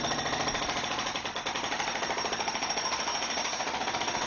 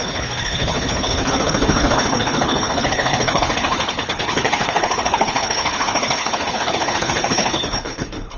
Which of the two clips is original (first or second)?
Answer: first